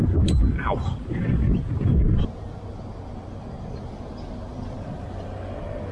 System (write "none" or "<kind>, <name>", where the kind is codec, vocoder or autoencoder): none